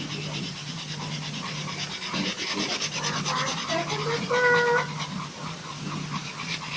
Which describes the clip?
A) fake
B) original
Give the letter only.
B